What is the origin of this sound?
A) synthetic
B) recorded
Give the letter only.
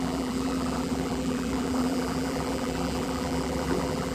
A